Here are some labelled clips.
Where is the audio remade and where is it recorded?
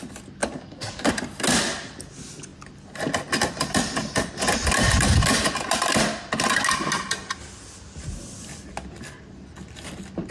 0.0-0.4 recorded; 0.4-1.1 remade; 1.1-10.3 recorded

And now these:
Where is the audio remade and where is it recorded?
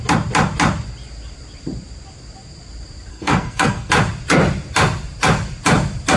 0.0-3.1 recorded; 3.1-3.9 remade; 3.9-6.2 recorded